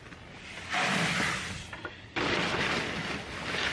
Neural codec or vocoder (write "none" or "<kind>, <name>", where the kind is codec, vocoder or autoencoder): none